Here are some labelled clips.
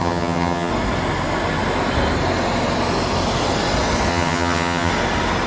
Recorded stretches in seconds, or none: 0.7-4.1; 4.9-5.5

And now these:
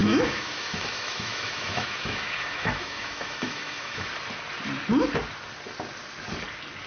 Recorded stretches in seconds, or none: 4.1-6.9

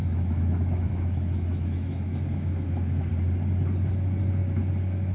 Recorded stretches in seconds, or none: 3.1-5.1

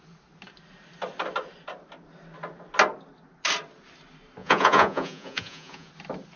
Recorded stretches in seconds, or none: 0.0-4.4; 5.9-6.4

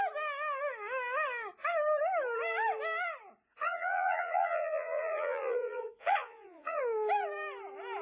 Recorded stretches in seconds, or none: 0.0-3.5; 6.8-8.0

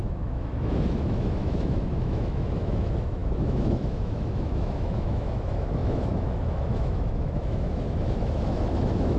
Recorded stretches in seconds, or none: none

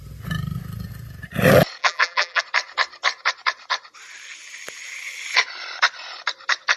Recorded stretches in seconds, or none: 0.0-1.8; 2.4-6.8